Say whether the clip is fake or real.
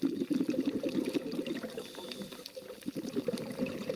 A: fake